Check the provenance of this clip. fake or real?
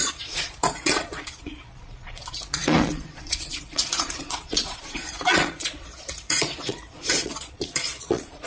fake